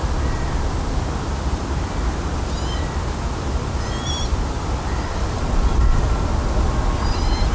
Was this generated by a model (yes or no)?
no